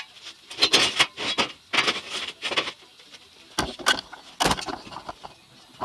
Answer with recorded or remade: recorded